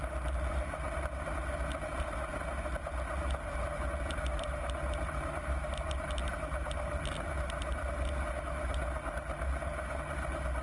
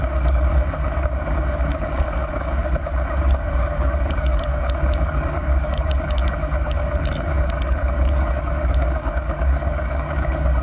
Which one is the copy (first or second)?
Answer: second